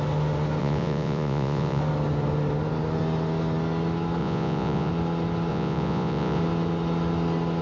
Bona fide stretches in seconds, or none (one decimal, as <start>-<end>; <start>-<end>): 0.0-0.6; 1.8-4.2; 4.9-5.5; 6.4-7.6